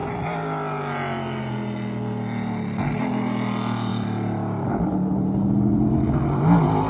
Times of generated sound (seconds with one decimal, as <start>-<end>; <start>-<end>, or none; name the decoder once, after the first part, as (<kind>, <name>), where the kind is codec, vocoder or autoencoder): none